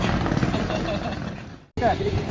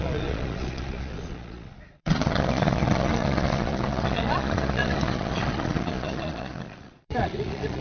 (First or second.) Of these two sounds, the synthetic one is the second